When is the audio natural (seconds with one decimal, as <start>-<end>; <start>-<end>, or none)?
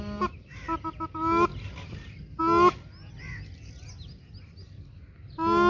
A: 0.0-5.7